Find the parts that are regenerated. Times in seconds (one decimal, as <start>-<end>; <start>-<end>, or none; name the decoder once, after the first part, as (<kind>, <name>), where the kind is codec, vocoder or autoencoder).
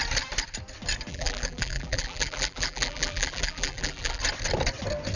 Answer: 1.1-4.2 (vocoder, BigVGAN v2)